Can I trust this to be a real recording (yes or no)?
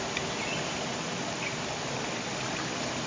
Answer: yes